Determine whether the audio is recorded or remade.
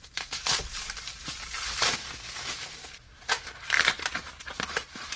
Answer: remade